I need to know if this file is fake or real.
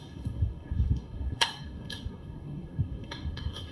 fake